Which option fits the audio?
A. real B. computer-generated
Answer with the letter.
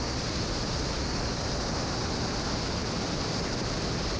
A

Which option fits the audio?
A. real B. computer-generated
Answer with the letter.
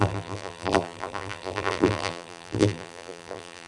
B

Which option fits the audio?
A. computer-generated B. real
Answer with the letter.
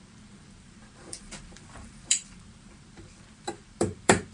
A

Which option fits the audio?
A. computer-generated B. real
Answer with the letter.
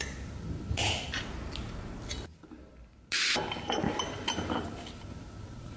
B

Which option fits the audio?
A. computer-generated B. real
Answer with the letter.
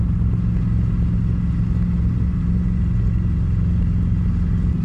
B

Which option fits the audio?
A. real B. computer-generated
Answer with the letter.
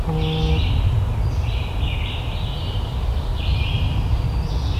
A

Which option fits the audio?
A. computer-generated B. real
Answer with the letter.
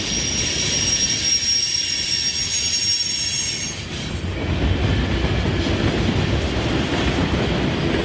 B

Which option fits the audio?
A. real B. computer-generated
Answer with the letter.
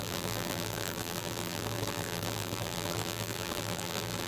B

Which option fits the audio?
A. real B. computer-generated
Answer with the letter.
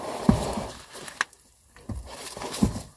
A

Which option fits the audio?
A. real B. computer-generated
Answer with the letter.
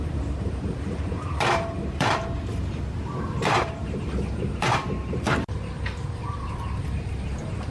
B